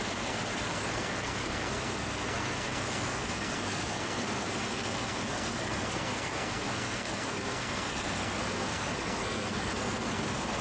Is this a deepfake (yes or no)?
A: yes